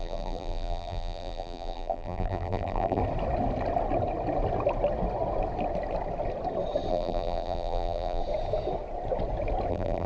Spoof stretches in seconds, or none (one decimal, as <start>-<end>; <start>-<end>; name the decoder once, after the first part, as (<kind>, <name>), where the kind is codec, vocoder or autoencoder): 0.0-3.0 (vocoder, BigVGAN v2); 6.9-8.2; 9.7-10.1